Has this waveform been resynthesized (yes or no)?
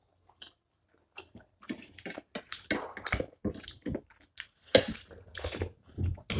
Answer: no